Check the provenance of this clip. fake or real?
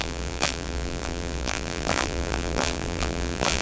fake